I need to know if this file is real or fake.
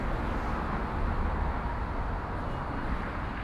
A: real